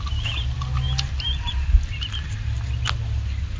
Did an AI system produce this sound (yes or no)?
no